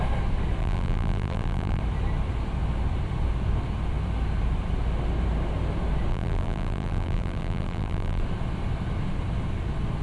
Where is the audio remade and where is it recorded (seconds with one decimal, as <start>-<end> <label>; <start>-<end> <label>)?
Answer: 0.0-0.6 recorded; 0.6-1.8 remade; 1.8-6.1 recorded; 6.1-8.2 remade; 8.2-10.0 recorded